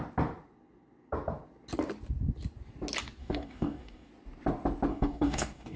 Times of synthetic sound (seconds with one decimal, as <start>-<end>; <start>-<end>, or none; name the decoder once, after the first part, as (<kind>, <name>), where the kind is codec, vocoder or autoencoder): 3.2-4.1 (codec, DAC); 4.9-5.8